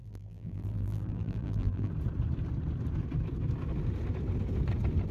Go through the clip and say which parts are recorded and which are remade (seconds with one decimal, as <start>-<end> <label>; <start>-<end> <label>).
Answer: 0.0-1.9 remade; 1.9-5.1 recorded